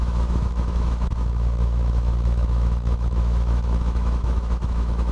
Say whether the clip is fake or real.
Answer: fake